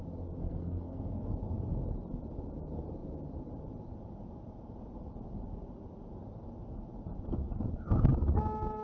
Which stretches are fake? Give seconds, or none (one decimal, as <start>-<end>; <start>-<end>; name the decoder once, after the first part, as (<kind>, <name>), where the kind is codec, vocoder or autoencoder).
0.4-1.3 (codec, SNAC)

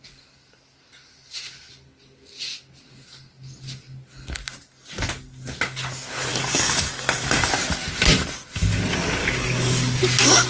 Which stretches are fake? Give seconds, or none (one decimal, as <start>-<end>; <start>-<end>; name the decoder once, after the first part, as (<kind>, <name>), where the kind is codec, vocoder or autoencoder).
6.3-7.5 (codec, DAC); 9.2-10.0

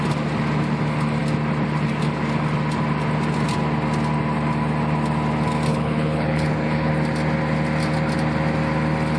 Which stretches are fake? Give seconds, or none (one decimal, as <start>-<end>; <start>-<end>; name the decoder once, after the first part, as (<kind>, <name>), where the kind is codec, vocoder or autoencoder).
5.7-6.9 (codec, HILCodec)

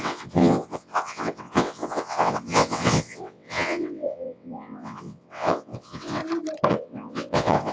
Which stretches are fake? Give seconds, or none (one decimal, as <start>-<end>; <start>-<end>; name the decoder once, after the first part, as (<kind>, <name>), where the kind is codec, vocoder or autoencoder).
0.0-6.2 (vocoder, WaveNeXt); 6.7-7.7

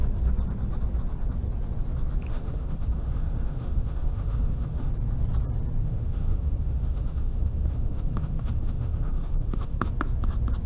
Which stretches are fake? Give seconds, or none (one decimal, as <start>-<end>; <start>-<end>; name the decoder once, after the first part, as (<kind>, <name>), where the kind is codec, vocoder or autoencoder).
2.3-4.9 (autoencoder, DAC-VAE); 5.8-9.9

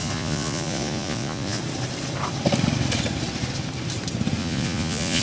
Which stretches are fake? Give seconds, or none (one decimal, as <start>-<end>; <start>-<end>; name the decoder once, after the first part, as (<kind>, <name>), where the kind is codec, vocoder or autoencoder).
0.0-1.6 (vocoder, Vocos); 4.4-5.2

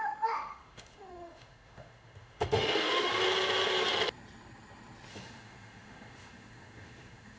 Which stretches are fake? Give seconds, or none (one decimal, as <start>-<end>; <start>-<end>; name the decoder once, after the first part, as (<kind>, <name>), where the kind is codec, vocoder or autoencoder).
0.0-3.1 (autoencoder, DAC-VAE); 5.1-7.4

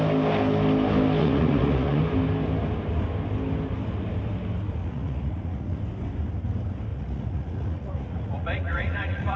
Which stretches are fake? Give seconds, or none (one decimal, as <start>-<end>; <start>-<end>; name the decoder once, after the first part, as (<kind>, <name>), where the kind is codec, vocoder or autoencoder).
1.2-2.0 (vocoder, Vocos); 4.8-5.8; 6.9-9.4